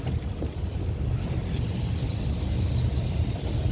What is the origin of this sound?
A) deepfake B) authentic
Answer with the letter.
B